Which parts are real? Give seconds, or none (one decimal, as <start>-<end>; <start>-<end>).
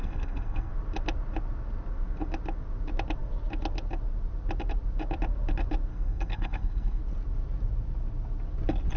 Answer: 0.7-5.9; 7.0-9.0